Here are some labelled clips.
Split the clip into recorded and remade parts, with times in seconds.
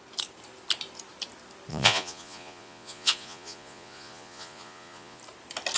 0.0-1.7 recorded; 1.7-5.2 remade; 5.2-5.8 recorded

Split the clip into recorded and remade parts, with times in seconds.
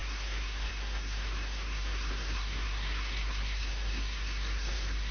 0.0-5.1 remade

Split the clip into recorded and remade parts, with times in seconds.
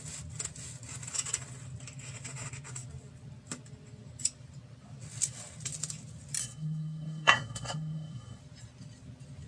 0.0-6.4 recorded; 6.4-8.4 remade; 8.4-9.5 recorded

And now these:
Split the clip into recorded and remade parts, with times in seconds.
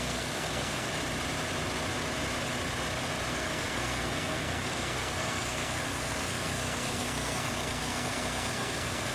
0.0-0.9 remade; 0.9-3.3 recorded; 3.3-9.1 remade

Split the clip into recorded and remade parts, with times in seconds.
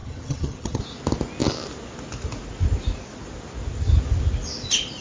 0.0-0.8 remade; 0.8-5.0 recorded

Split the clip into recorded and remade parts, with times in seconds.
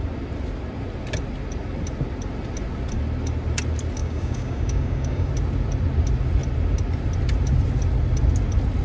0.0-4.0 recorded; 4.0-5.3 remade; 5.3-8.8 recorded